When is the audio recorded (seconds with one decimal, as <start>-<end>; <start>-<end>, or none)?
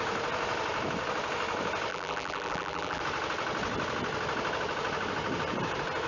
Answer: 0.0-1.9; 3.0-6.1